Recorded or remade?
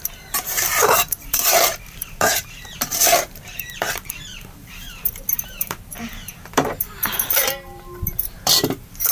remade